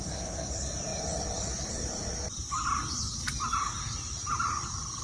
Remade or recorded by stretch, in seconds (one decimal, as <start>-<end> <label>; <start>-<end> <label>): 0.0-0.9 recorded; 0.9-2.1 remade; 2.1-5.0 recorded